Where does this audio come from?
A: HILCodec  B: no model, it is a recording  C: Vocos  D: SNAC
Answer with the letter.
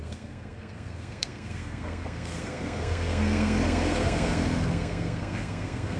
D